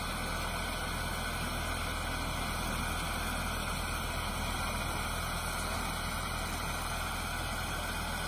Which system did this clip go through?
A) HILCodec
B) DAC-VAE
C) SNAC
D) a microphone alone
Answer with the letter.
D